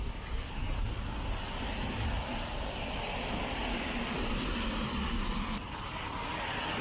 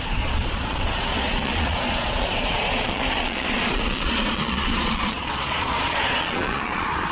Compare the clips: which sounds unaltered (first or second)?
first